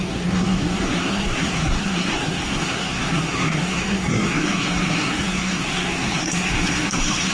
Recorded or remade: remade